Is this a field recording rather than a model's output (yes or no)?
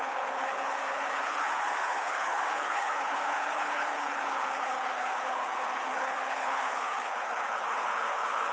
no